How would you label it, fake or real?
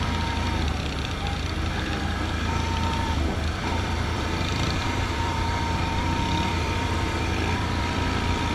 fake